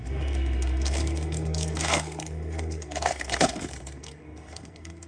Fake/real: fake